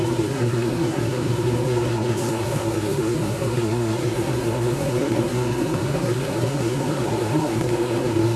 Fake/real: fake